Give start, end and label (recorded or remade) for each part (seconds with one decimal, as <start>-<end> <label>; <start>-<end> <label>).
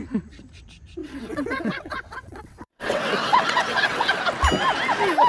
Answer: 0.0-1.0 recorded; 1.0-4.2 remade; 4.2-5.3 recorded